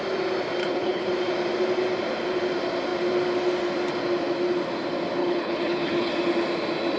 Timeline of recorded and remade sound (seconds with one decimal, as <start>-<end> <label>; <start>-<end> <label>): 0.0-0.6 recorded; 0.6-1.1 remade; 1.1-5.2 recorded; 5.2-6.1 remade; 6.1-7.0 recorded